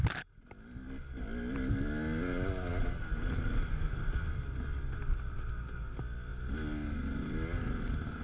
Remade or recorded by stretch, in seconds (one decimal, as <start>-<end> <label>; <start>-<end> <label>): 0.0-8.2 recorded